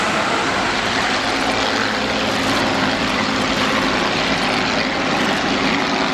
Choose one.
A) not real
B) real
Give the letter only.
A